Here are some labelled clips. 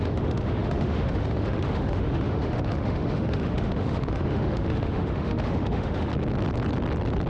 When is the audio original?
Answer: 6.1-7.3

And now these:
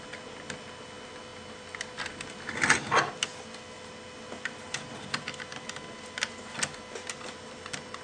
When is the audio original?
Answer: 0.0-8.0

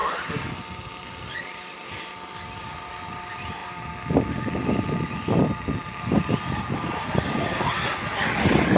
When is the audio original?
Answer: 0.0-8.8

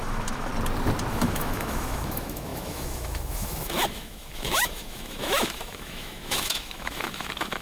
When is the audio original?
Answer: 0.5-1.1

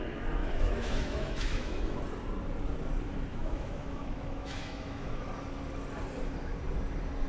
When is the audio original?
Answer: 0.0-0.4; 2.0-3.3; 5.2-7.3

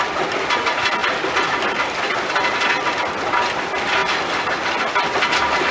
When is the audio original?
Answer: 0.0-5.7